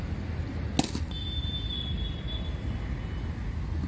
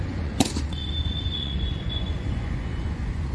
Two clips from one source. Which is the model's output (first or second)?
second